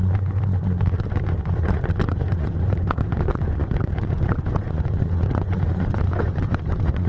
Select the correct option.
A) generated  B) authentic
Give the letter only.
A